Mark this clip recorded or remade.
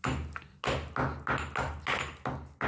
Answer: recorded